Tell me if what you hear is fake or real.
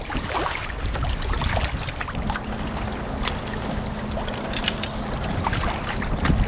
real